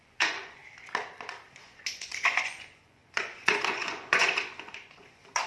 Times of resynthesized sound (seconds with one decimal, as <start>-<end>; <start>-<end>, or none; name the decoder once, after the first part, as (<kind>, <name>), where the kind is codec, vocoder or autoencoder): 0.0-0.6 (vocoder, Vocos); 1.6-5.5